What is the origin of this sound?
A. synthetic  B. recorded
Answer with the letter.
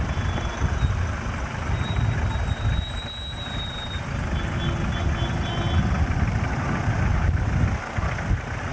B